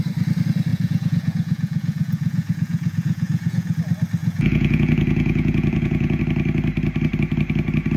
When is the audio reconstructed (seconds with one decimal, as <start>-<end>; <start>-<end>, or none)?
0.7-3.8; 4.2-6.2